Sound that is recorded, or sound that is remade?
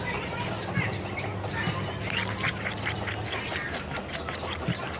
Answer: remade